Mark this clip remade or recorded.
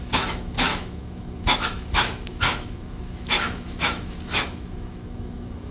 remade